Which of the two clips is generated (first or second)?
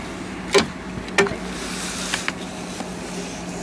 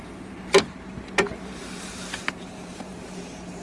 second